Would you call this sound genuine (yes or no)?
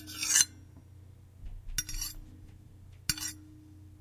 yes